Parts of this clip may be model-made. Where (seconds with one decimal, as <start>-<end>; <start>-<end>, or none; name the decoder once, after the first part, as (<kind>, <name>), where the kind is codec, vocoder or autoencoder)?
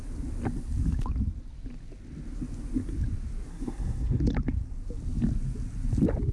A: 3.5-4.2 (codec, SNAC)